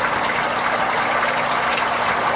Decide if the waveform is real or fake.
real